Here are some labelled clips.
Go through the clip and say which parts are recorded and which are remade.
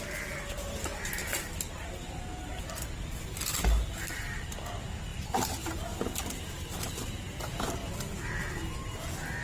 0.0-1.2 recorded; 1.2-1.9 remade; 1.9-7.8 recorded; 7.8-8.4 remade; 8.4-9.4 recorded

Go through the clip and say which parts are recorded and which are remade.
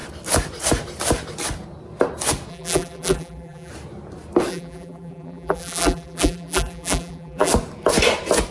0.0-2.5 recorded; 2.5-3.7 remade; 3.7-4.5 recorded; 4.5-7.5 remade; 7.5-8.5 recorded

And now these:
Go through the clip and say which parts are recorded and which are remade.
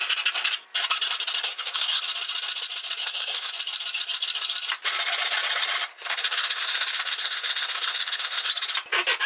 0.0-1.4 recorded; 1.4-2.0 remade; 2.0-3.0 recorded; 3.0-3.5 remade; 3.5-5.9 recorded; 5.9-8.5 remade; 8.5-9.3 recorded